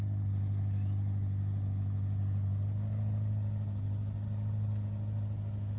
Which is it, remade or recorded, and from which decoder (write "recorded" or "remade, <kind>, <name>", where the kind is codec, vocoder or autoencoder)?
recorded